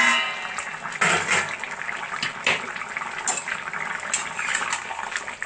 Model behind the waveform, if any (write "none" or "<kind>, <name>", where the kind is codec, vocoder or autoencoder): none